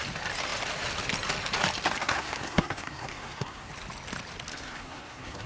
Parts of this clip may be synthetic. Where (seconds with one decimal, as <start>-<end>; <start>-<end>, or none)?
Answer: 2.0-3.7; 4.5-5.5